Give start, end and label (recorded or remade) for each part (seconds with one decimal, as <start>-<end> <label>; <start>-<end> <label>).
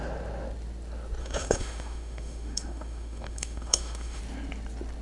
0.0-1.2 recorded; 1.2-4.2 remade; 4.2-5.0 recorded